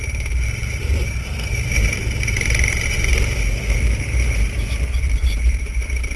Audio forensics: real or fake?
fake